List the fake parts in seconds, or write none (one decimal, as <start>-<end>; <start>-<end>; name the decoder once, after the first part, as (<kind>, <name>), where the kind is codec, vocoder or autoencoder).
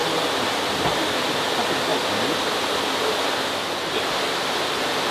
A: none